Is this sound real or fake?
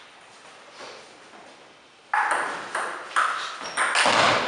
real